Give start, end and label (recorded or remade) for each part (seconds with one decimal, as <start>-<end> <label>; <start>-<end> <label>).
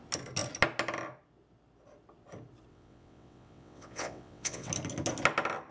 0.0-2.7 recorded; 2.7-4.7 remade; 4.7-5.7 recorded